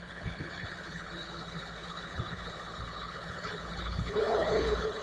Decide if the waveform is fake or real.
fake